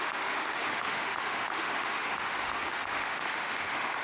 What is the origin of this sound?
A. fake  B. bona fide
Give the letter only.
A